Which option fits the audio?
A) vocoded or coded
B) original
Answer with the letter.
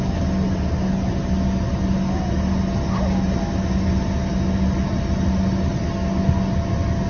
B